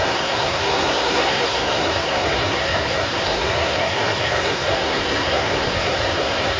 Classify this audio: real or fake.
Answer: fake